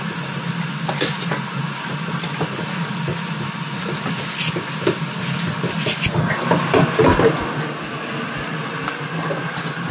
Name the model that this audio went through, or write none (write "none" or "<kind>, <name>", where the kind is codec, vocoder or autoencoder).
none